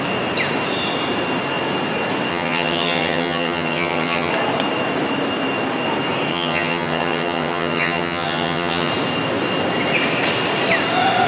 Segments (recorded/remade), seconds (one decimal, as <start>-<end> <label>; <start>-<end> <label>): 0.0-2.3 recorded; 2.3-4.3 remade; 4.3-6.3 recorded; 6.3-8.9 remade; 8.9-11.3 recorded